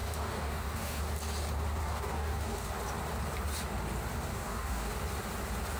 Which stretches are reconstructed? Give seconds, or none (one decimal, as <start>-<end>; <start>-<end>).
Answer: 0.0-1.0; 1.8-2.7; 4.3-4.9